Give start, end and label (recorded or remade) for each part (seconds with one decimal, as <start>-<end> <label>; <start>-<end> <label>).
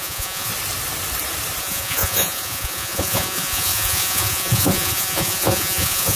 0.0-0.5 remade; 0.5-1.6 recorded; 1.6-6.2 remade